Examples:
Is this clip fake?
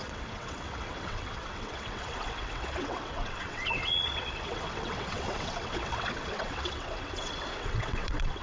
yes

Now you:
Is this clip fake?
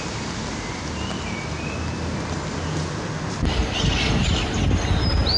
no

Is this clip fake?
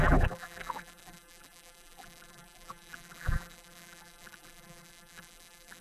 yes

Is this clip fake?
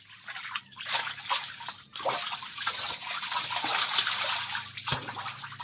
no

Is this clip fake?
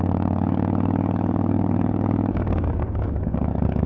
yes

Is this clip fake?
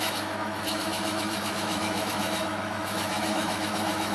yes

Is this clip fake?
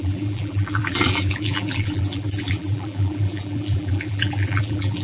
yes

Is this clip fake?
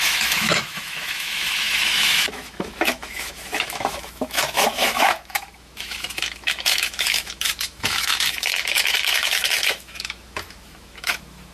yes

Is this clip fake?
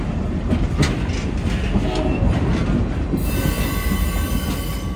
no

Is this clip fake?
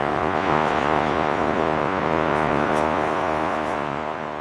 yes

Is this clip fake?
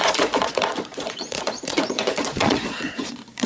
yes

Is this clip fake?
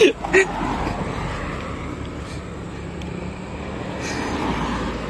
no